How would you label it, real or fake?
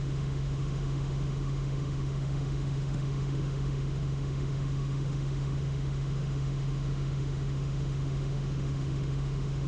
fake